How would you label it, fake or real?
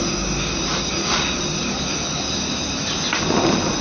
real